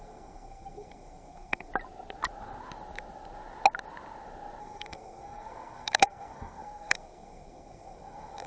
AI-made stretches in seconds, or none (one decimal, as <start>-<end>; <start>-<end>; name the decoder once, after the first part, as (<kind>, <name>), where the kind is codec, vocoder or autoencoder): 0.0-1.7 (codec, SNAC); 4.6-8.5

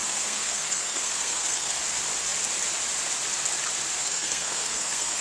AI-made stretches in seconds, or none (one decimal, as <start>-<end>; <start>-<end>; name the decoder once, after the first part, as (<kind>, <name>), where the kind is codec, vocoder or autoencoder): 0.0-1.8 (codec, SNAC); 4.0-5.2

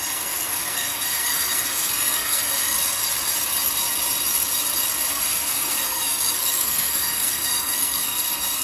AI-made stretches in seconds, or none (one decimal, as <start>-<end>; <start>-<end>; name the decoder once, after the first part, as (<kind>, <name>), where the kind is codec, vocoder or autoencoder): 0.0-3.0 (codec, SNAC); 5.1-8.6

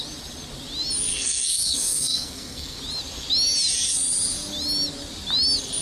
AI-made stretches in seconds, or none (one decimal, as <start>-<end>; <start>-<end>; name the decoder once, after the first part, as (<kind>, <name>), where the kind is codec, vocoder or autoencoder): 1.1-2.8 (codec, SNAC)

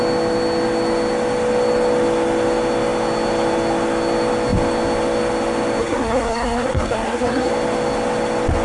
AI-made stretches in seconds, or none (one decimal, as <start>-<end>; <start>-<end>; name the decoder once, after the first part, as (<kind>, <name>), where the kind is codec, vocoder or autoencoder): 5.8-7.5 (codec, SNAC)